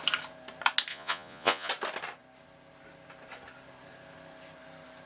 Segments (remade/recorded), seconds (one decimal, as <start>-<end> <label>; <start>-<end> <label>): 0.0-0.9 recorded; 0.9-1.7 remade; 1.7-5.1 recorded